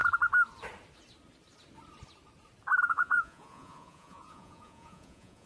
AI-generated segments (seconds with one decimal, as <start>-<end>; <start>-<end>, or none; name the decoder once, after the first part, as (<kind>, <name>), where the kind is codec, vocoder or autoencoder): 2.9-5.5 (vocoder, Vocos)